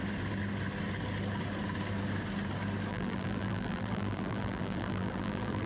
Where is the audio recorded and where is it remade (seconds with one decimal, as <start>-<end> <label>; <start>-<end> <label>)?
0.0-2.9 recorded; 2.9-5.7 remade